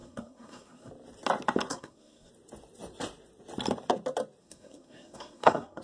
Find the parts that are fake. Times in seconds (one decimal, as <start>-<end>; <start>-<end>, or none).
0.0-0.9; 1.7-2.3; 4.4-5.8